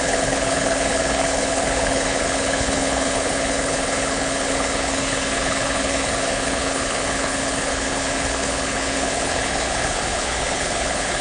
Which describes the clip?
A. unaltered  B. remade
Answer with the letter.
B